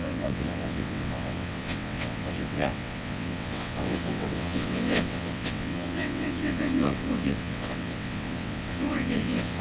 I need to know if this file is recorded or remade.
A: remade